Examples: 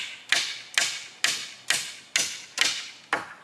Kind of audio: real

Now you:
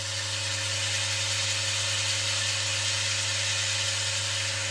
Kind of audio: real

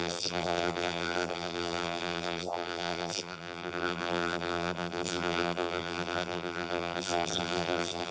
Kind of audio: fake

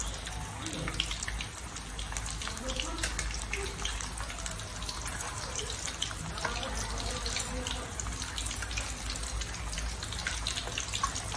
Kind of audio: real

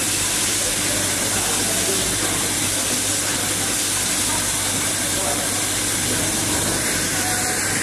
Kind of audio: real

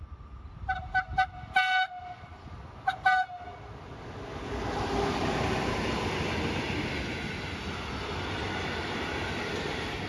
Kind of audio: real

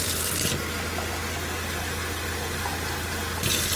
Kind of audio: fake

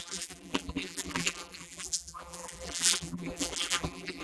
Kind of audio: fake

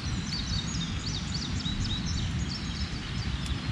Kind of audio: real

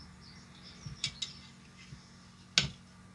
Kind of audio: real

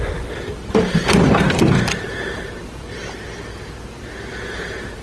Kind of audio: fake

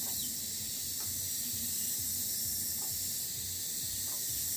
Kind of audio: fake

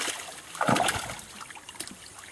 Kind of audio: real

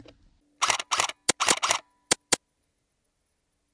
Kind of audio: real